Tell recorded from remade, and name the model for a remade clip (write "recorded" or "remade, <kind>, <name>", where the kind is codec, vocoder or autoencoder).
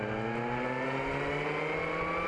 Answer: recorded